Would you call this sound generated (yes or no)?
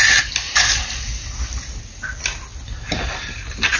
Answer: no